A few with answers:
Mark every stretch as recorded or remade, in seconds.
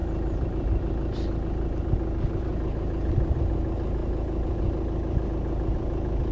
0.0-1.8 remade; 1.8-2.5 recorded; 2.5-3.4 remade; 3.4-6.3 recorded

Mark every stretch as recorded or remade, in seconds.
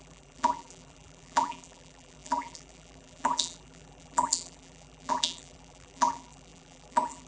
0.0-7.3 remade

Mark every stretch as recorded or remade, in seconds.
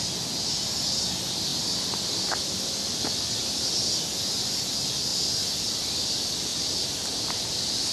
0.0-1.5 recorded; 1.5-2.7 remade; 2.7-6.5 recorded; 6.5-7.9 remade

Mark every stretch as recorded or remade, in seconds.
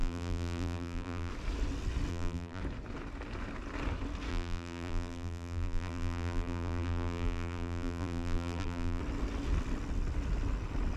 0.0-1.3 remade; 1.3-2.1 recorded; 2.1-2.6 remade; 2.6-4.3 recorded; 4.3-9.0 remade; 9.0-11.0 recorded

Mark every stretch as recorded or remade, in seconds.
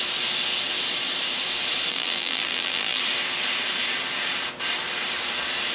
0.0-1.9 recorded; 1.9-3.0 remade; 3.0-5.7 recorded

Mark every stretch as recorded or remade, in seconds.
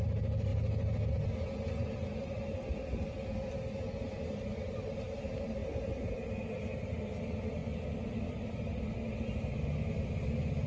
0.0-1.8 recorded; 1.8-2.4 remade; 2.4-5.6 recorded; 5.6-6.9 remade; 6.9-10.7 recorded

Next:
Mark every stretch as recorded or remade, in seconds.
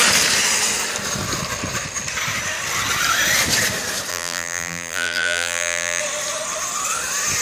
0.0-4.1 recorded; 4.1-6.0 remade; 6.0-7.4 recorded